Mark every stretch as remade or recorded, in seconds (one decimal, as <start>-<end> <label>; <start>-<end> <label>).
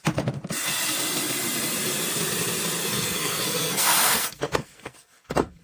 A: 0.0-2.8 recorded; 2.8-5.6 remade